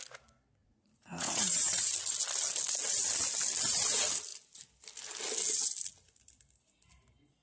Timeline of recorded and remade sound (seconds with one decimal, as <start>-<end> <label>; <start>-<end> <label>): 0.0-0.6 recorded; 0.6-1.9 remade; 1.9-7.4 recorded